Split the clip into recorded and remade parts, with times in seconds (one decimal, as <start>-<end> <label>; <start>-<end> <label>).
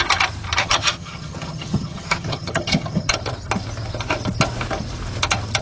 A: 0.0-0.6 recorded; 0.6-3.1 remade; 3.1-5.6 recorded